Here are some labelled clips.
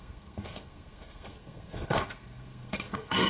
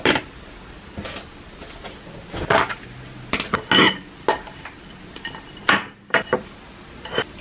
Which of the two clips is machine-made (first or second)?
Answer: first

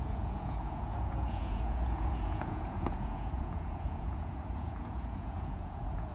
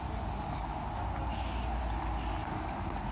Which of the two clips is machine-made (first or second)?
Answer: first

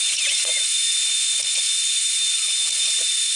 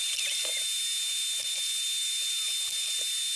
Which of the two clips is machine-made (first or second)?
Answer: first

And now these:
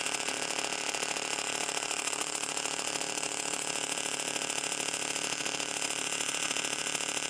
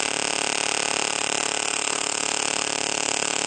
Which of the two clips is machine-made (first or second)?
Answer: first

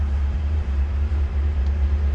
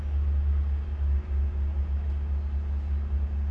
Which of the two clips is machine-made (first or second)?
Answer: first